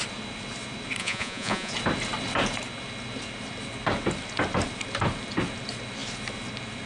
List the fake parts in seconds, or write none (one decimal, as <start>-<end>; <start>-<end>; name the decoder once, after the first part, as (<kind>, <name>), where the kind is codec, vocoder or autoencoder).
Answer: 1.0-1.7 (vocoder, Vocos)